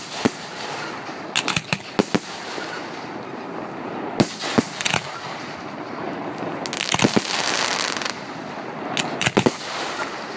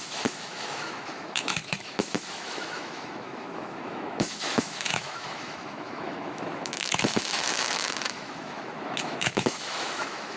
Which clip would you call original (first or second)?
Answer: first